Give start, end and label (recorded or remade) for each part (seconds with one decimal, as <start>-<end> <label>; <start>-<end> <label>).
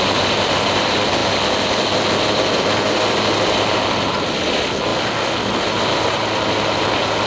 0.0-7.3 recorded